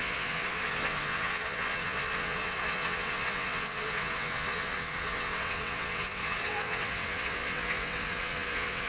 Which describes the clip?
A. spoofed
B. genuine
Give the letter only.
A